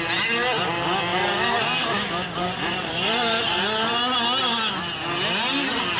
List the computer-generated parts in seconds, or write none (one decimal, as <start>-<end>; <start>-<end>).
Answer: 1.1-4.0